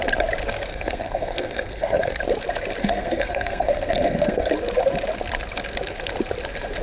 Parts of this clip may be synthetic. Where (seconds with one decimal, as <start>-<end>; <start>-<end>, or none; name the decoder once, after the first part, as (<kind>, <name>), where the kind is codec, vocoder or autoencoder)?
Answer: 0.7-2.2 (codec, SNAC); 2.8-4.5